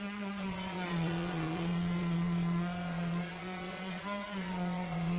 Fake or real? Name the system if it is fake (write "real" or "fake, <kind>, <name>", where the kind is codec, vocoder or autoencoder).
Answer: fake, vocoder, Vocos